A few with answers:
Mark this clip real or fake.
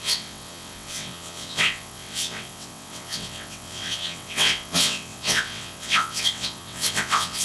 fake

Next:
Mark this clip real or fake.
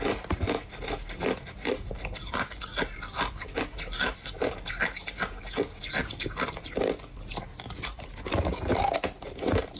real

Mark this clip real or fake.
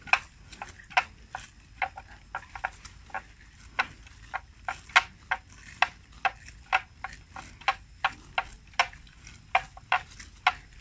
real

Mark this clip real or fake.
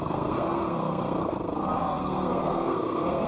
fake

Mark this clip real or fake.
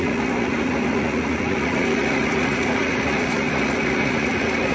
fake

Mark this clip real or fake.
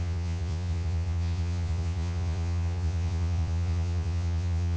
fake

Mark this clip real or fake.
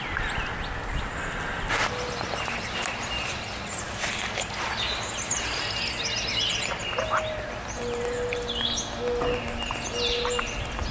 real